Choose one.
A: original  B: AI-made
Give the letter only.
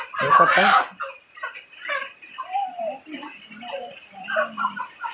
B